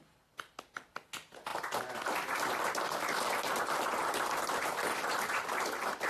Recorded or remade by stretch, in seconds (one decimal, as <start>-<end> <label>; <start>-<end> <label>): 0.0-6.1 recorded